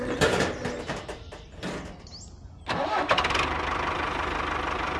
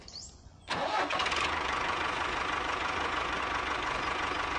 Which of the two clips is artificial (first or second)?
second